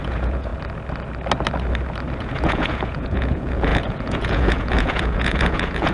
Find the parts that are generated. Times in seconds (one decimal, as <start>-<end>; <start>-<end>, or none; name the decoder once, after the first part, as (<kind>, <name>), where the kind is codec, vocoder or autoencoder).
0.0-0.5 (vocoder, Vocos); 2.2-5.9